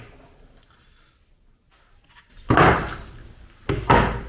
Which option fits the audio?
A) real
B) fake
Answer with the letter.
A